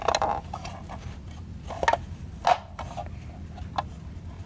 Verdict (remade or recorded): recorded